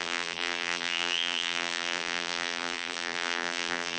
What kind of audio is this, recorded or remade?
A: remade